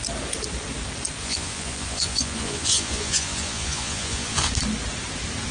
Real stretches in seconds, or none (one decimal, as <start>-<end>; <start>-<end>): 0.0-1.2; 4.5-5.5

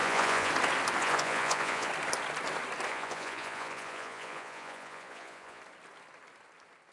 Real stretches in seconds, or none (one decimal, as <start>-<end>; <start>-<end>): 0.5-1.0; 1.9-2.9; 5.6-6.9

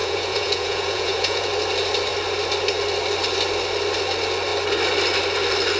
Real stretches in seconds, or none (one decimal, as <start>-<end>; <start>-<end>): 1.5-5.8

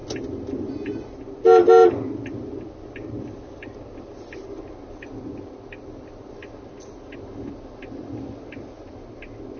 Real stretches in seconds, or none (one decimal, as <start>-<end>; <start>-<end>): 0.0-9.6

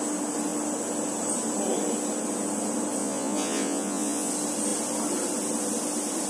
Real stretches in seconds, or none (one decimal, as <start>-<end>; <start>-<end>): 0.0-3.0; 4.3-6.3

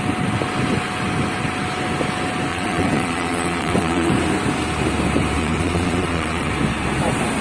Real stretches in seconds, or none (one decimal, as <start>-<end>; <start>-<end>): 0.0-2.5; 4.1-5.4; 6.5-7.4

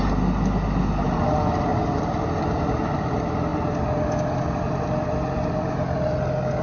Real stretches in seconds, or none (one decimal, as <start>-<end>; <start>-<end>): 0.0-6.6